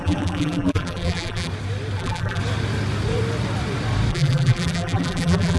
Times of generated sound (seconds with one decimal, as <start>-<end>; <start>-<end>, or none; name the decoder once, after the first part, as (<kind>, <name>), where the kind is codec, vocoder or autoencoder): 0.0-1.5 (vocoder, BigVGAN v2); 2.0-2.4; 4.1-5.6